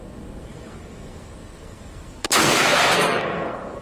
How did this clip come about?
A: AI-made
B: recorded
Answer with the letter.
A